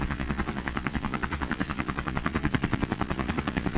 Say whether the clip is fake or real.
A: fake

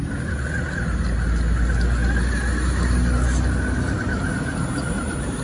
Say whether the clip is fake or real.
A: real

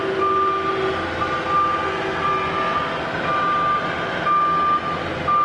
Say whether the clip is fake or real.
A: real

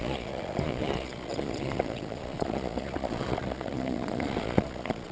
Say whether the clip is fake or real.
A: fake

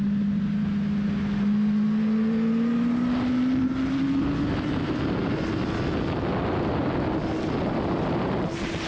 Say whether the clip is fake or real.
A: real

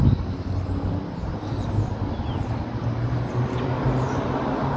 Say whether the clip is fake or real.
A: real